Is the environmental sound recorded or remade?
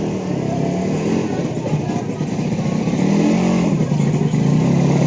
recorded